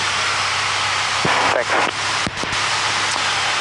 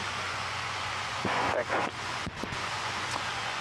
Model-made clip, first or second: second